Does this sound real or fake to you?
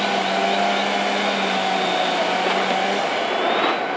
real